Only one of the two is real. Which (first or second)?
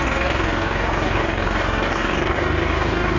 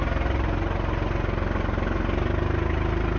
second